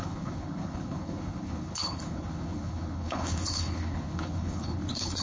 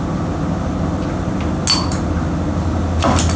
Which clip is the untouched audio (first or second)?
second